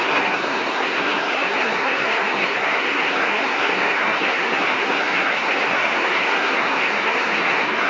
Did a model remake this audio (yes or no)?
yes